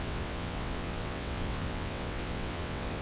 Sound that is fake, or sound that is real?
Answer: fake